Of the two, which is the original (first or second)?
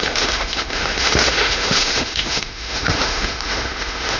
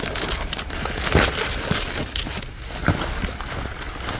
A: second